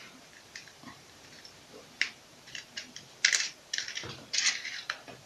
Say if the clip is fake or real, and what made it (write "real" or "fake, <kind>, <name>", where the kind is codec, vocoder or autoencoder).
fake, vocoder, BigVGAN v2